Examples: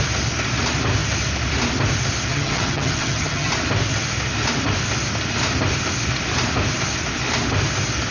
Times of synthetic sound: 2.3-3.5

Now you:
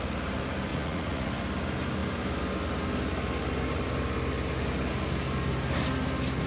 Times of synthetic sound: 0.7-1.3

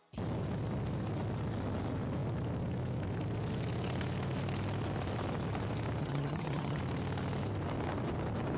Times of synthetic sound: 6.0-6.8

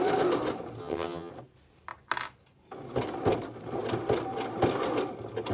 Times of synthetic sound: 0.8-1.3

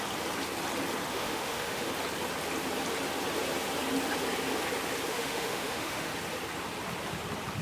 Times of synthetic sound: 1.1-1.9; 5.1-6.1

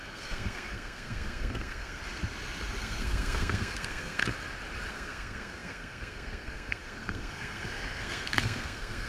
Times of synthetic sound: 0.0-2.0; 2.8-4.2; 4.9-9.1

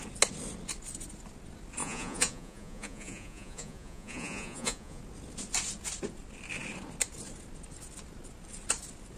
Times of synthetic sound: 1.8-5.0

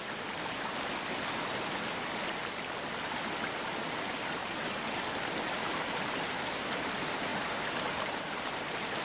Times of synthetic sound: 7.3-8.5